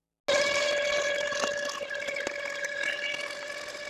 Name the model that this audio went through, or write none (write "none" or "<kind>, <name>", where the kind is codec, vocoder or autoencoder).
none